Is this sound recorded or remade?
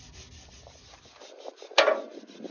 recorded